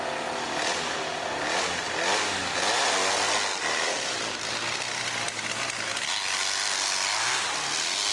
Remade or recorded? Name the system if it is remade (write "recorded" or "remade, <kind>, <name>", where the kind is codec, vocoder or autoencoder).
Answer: recorded